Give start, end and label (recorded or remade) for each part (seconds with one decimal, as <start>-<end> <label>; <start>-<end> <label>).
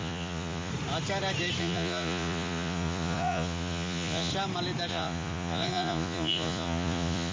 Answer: 0.0-0.7 remade; 0.7-1.6 recorded; 1.6-4.3 remade; 4.3-4.9 recorded; 4.9-7.3 remade